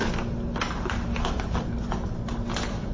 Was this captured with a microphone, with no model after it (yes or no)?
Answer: yes